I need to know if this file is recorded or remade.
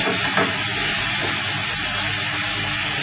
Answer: recorded